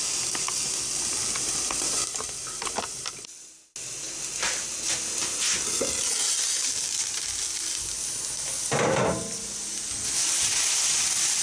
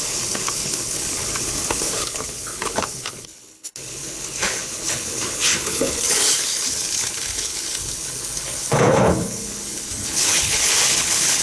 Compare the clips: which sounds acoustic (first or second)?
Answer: first